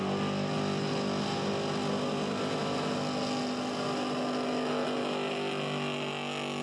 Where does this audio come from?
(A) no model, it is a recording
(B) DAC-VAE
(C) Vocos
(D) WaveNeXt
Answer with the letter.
A